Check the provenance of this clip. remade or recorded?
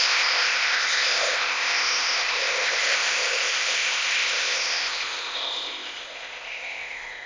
remade